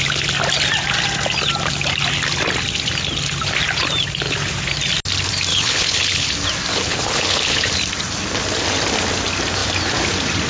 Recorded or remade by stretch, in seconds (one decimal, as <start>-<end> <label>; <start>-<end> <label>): 0.0-5.5 recorded; 5.5-6.3 remade; 6.3-6.7 recorded; 6.7-7.7 remade; 7.7-10.5 recorded